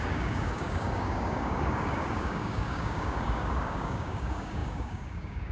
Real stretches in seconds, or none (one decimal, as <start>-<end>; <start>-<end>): none